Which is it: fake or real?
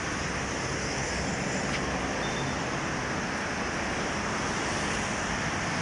real